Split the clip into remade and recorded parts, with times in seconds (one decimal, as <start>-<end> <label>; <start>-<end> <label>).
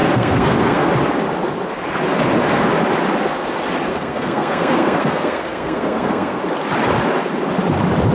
0.0-0.9 remade; 0.9-3.9 recorded; 3.9-6.4 remade; 6.4-8.1 recorded